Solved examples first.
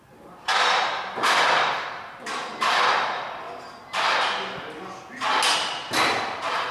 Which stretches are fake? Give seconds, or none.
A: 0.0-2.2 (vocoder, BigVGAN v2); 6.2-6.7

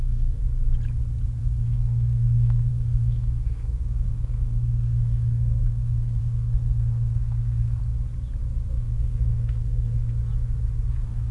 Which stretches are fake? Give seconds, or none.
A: 0.0-0.4 (codec, SNAC); 1.4-7.8; 8.7-10.2; 10.9-11.3

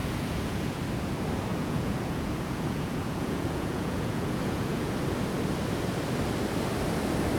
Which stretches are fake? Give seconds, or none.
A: 0.0-0.8 (vocoder, Vocos); 1.5-4.9

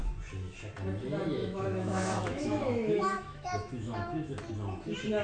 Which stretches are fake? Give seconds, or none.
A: 1.4-4.5 (autoencoder, DAC-VAE)

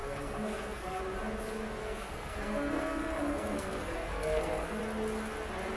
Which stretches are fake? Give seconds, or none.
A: 0.0-1.0 (codec, SNAC); 1.8-4.8

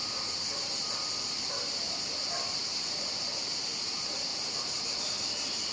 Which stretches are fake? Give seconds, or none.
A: 4.3-4.9 (vocoder, BigVGAN v2)

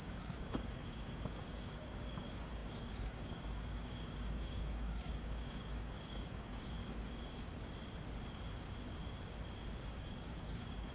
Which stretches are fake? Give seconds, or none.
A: 0.0-6.8 (codec, DAC); 10.0-10.9

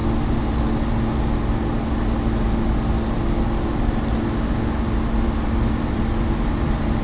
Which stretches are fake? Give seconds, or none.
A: none